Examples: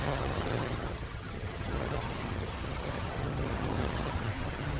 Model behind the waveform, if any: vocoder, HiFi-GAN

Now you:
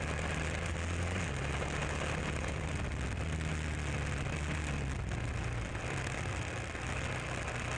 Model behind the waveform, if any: none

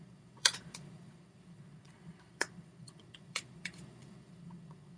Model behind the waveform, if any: vocoder, Vocos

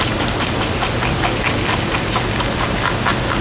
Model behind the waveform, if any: none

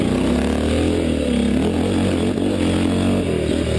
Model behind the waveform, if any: none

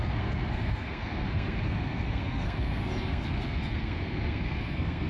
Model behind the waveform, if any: codec, SNAC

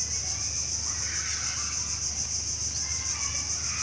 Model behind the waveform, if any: none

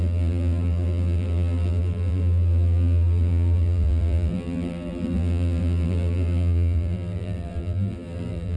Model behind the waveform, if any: vocoder, BigVGAN v2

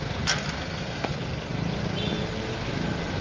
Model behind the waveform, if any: none